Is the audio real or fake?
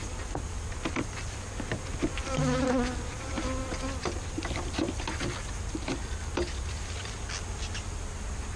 real